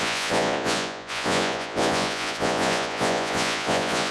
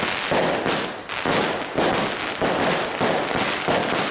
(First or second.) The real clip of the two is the second